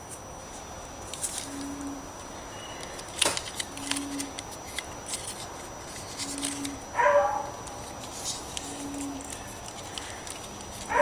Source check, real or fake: real